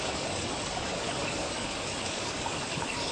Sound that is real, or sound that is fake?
fake